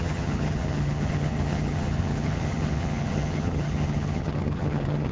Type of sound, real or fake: fake